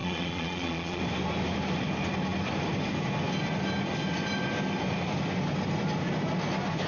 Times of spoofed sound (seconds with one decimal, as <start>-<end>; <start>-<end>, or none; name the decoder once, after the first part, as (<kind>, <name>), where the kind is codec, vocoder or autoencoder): 0.0-1.0 (vocoder, Vocos)